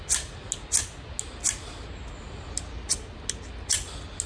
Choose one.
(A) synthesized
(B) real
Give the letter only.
B